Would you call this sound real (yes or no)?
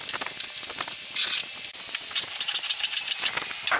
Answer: yes